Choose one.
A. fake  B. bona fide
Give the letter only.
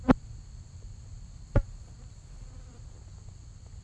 A